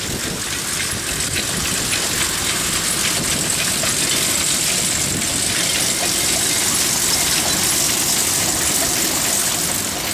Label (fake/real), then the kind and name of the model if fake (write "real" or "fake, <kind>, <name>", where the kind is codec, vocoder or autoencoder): real